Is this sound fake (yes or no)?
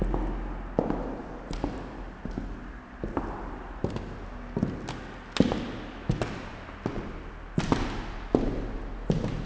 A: no